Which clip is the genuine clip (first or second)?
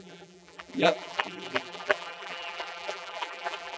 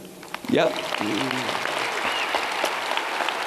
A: second